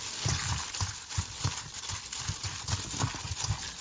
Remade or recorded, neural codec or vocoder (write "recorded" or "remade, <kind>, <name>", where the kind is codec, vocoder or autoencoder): recorded